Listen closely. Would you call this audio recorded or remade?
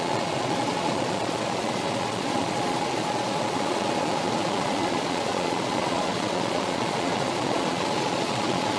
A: remade